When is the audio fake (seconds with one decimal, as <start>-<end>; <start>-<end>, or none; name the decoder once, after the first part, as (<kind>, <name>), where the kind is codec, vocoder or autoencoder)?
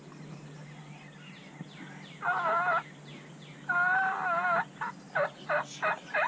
none